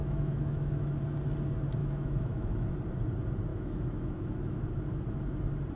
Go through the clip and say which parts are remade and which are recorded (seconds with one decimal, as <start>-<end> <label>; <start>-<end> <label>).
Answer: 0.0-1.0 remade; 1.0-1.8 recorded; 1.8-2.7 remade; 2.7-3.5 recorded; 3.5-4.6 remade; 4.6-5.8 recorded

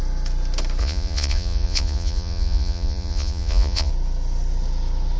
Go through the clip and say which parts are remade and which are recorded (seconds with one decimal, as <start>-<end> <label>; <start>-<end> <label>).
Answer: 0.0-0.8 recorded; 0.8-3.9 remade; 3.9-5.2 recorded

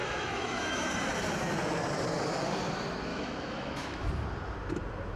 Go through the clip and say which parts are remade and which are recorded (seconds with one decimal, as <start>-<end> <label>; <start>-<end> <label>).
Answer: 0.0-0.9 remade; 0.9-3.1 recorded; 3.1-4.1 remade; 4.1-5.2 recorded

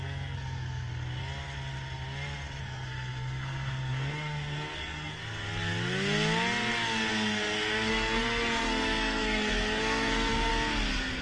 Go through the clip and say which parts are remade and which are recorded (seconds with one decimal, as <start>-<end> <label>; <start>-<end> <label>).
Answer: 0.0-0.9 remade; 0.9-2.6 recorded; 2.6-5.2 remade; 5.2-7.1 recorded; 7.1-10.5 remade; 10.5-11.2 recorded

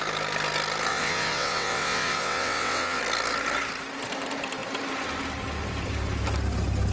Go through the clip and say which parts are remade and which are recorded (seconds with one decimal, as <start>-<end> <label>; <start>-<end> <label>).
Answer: 0.0-0.9 recorded; 0.9-3.0 remade; 3.0-6.9 recorded

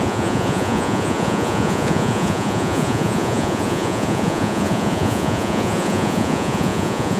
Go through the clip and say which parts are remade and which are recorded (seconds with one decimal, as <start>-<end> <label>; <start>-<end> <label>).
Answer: 0.0-7.2 remade